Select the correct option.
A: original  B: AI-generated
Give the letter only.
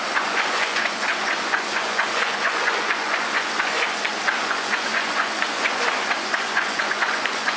B